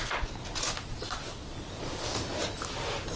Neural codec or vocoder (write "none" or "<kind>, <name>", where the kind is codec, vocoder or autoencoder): none